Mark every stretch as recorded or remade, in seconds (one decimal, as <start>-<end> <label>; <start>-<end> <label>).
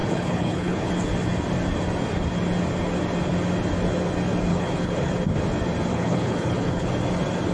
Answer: 0.0-0.9 remade; 0.9-4.5 recorded; 4.5-5.1 remade; 5.1-5.9 recorded; 5.9-6.9 remade; 6.9-7.5 recorded